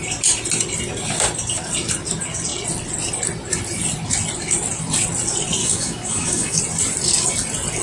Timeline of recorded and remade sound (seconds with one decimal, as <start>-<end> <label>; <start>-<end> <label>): 0.0-5.6 recorded; 5.6-6.6 remade; 6.6-7.8 recorded